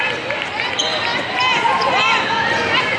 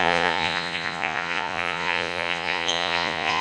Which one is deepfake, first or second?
second